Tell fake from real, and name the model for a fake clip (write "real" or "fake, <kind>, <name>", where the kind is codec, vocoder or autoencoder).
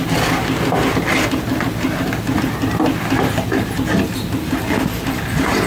real